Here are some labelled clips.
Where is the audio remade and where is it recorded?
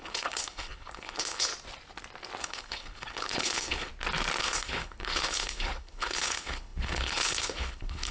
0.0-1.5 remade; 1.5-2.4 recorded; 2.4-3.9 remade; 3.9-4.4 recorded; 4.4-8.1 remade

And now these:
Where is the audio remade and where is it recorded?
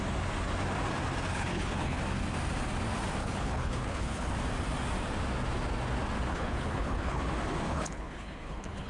0.0-1.3 recorded; 1.3-2.0 remade; 2.0-3.2 recorded; 3.2-4.3 remade; 4.3-6.3 recorded; 6.3-7.2 remade; 7.2-7.7 recorded; 7.7-8.9 remade